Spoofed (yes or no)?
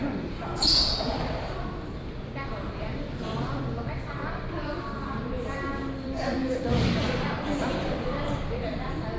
yes